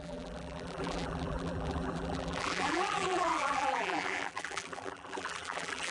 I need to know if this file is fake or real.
fake